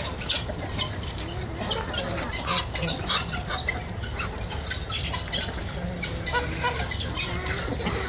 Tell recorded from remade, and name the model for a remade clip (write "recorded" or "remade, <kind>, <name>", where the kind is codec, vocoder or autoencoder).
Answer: recorded